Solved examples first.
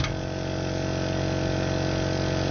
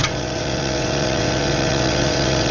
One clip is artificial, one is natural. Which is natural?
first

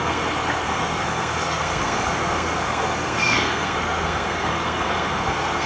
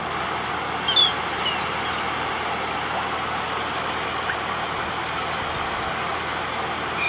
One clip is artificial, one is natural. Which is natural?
second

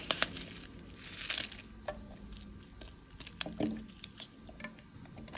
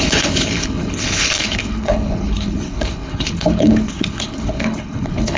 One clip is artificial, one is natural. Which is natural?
first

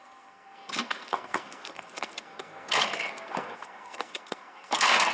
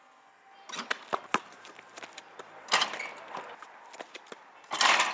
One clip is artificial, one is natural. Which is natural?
second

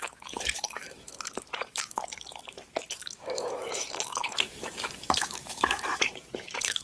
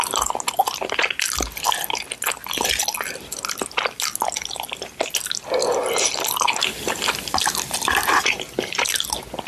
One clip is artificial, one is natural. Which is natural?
second